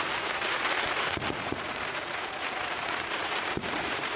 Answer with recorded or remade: remade